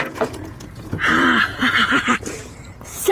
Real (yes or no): no